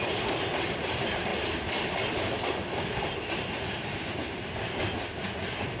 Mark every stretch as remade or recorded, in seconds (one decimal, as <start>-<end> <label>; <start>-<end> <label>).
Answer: 0.0-5.8 recorded

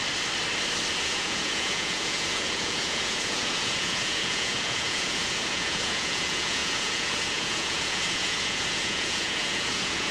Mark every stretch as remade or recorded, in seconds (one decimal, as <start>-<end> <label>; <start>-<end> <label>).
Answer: 0.0-0.9 recorded; 0.9-10.1 remade

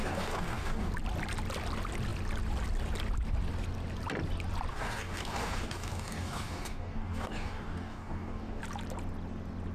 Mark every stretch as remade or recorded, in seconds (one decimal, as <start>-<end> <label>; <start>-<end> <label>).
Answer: 0.0-0.9 remade; 0.9-4.7 recorded; 4.7-8.6 remade; 8.6-9.7 recorded

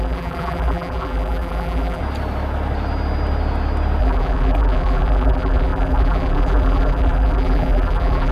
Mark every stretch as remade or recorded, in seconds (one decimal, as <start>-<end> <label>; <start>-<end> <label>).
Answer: 0.0-2.0 remade; 2.0-4.0 recorded; 4.0-8.3 remade